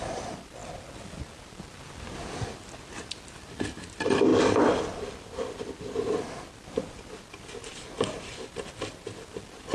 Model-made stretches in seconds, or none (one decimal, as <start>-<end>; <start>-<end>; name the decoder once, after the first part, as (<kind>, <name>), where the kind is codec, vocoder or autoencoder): 0.0-0.6 (vocoder, BigVGAN v2); 2.4-9.7